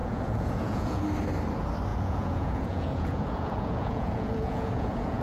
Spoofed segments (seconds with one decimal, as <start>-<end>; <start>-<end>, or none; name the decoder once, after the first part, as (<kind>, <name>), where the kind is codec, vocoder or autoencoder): 0.0-1.0 (vocoder, Vocos); 1.9-5.2